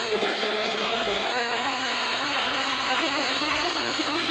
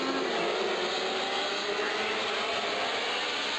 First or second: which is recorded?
second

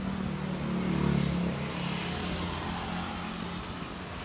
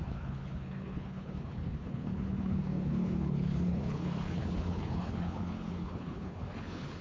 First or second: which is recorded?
first